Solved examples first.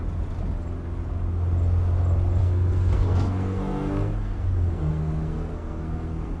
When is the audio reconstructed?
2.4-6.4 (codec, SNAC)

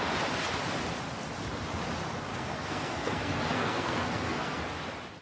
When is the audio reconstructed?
2.3-4.6 (codec, SNAC)